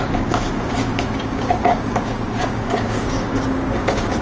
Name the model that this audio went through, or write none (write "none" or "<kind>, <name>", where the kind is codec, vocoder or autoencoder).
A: codec, DAC